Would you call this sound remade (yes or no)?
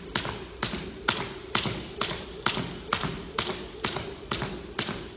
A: no